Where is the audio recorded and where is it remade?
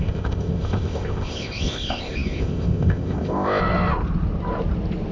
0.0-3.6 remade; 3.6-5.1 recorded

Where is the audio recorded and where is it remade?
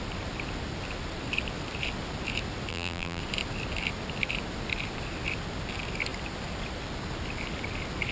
0.0-2.7 recorded; 2.7-3.2 remade; 3.2-8.1 recorded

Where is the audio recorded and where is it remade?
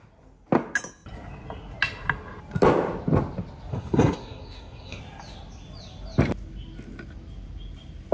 0.0-3.7 recorded; 3.7-5.0 remade; 5.0-8.1 recorded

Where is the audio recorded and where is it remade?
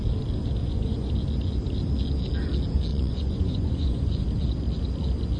0.0-0.6 recorded; 0.6-1.1 remade; 1.1-2.9 recorded; 2.9-4.2 remade; 4.2-5.4 recorded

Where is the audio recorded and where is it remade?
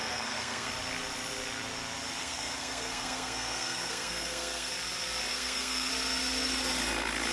0.0-0.7 remade; 0.7-2.2 recorded; 2.2-4.7 remade; 4.7-5.3 recorded; 5.3-5.9 remade; 5.9-7.3 recorded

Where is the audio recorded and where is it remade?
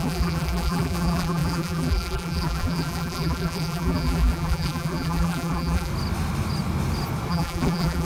0.0-5.9 remade; 5.9-7.3 recorded; 7.3-8.0 remade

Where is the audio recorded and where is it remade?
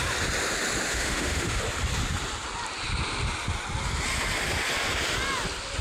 0.0-0.9 recorded; 0.9-1.6 remade; 1.6-5.8 recorded